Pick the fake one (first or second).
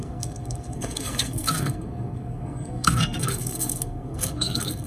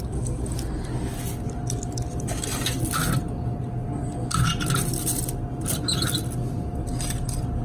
first